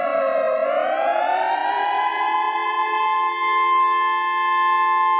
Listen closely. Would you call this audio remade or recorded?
recorded